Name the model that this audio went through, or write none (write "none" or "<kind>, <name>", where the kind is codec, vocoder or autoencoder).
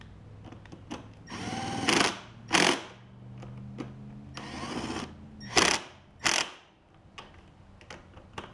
none